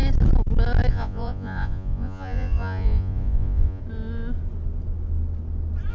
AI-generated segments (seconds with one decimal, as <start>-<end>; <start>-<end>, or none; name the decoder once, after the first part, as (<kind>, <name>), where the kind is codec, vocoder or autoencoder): 0.9-3.8 (vocoder, Vocos)